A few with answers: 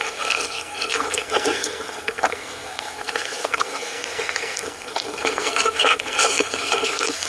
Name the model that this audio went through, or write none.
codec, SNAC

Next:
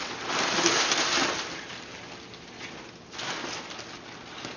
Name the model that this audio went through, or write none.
none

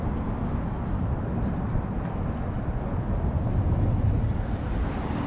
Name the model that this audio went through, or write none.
none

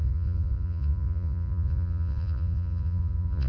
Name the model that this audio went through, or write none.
vocoder, Vocos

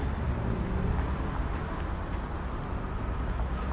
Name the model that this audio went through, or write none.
none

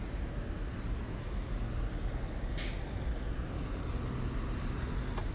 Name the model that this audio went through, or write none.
none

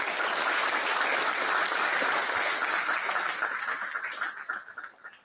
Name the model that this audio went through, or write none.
none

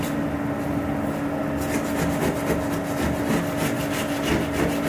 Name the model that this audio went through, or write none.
none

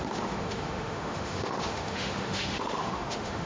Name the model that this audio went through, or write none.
autoencoder, DAC-VAE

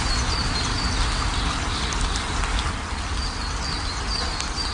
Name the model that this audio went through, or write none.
none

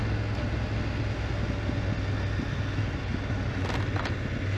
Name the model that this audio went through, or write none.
none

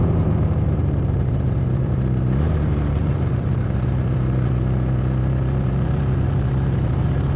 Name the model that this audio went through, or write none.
vocoder, BigVGAN v2